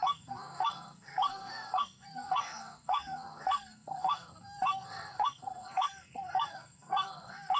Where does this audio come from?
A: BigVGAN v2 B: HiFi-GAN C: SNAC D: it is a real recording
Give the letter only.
C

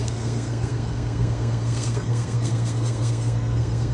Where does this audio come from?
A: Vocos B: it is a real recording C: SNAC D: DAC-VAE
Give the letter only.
C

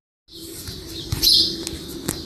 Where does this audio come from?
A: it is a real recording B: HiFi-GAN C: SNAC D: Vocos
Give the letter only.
A